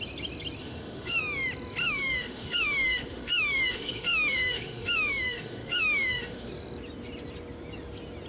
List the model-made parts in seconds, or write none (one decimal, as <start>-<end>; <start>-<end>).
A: 0.6-1.2; 1.8-6.5